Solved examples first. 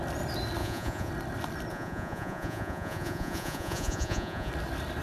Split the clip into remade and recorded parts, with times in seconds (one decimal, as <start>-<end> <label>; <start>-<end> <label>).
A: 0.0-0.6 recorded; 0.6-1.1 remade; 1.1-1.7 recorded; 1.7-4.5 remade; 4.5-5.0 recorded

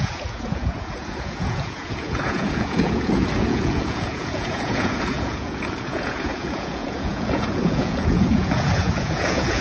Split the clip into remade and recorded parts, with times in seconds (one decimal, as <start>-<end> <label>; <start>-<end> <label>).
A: 0.0-9.6 remade

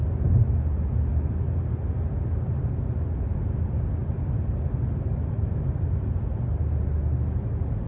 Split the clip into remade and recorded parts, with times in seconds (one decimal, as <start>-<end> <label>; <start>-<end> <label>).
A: 0.0-7.9 recorded